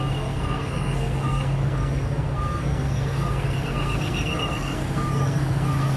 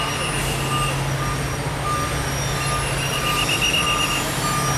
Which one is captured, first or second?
second